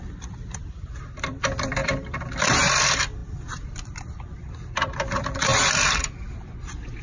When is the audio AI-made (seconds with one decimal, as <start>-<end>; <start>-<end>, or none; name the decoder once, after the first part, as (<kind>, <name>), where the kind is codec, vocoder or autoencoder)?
0.0-1.8 (vocoder, BigVGAN v2); 2.7-7.0